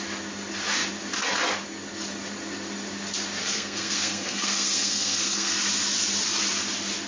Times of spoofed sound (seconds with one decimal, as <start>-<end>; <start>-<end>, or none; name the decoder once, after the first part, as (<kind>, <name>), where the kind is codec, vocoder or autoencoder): 3.4-5.5 (codec, SNAC)